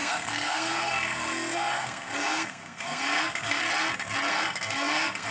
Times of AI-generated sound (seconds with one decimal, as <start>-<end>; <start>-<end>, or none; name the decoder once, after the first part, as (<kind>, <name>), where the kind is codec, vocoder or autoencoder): 0.0-3.6 (codec, SNAC); 4.3-5.3